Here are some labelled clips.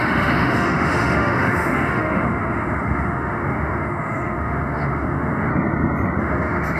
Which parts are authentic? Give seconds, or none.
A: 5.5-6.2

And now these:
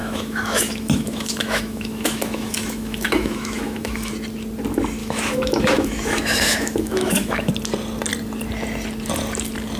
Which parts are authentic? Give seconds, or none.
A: 4.1-5.0; 7.5-9.8